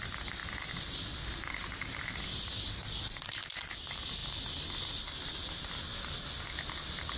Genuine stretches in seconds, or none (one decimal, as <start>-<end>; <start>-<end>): 0.0-7.2